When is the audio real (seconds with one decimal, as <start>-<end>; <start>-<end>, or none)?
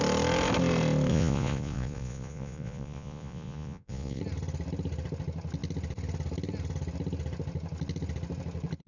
0.0-1.1; 4.2-8.9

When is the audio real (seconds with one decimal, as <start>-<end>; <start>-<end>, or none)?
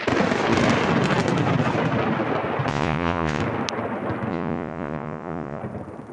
0.0-2.7; 3.4-4.3; 5.6-6.1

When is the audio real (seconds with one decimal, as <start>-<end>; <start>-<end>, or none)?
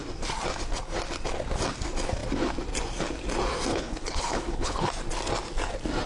0.0-3.7; 4.9-6.1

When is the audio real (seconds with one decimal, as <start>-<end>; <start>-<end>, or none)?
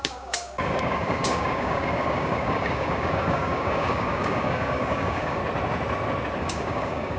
5.4-6.4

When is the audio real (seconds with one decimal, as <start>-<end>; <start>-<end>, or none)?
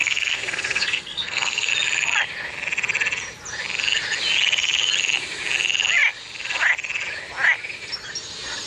1.7-8.7